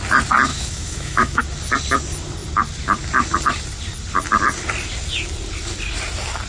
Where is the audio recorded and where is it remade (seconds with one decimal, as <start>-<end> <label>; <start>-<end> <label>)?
0.0-0.5 recorded; 0.5-1.4 remade; 1.4-6.5 recorded